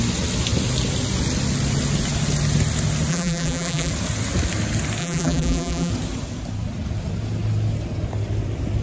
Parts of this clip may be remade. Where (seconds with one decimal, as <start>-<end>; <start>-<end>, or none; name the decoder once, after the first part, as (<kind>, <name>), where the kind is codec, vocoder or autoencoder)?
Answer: 3.1-3.9 (vocoder, BigVGAN v2); 5.0-5.9